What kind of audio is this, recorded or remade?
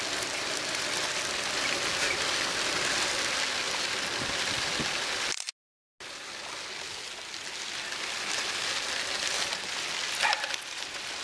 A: recorded